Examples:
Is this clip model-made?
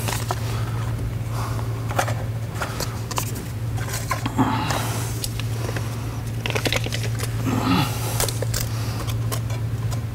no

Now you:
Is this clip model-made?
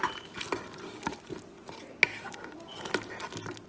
no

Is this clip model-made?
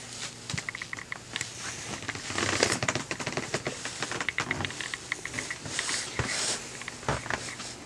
no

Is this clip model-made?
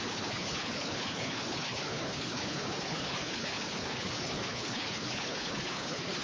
yes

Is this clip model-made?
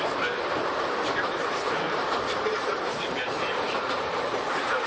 yes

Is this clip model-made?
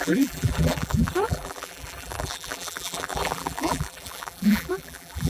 yes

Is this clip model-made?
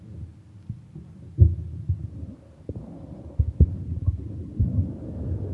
no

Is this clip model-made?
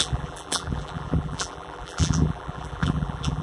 yes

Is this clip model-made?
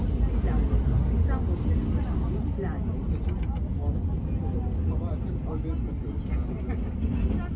no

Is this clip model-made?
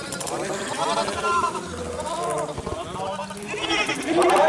no